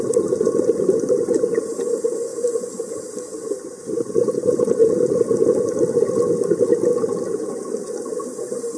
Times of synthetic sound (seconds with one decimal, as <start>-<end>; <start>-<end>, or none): 0.0-4.8; 7.3-8.8